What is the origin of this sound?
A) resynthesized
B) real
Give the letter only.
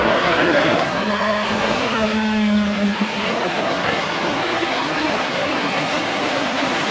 A